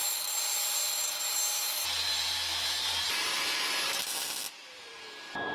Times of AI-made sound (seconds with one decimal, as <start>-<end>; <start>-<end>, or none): 0.0-3.3; 4.0-4.9